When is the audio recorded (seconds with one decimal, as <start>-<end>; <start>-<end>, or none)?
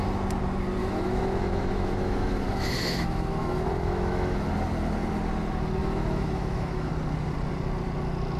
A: 0.0-0.8; 4.5-5.8; 6.9-8.4